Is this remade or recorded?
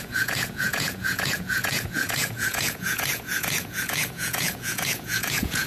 remade